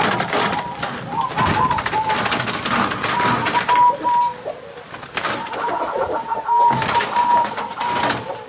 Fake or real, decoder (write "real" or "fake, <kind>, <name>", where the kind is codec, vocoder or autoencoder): real